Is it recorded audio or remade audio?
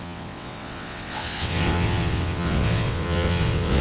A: remade